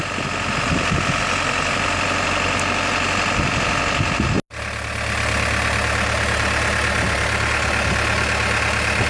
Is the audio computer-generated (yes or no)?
no